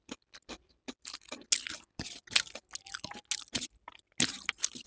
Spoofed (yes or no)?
no